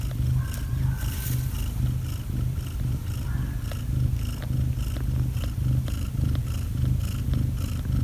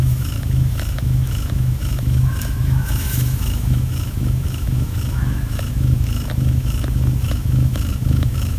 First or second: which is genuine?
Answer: first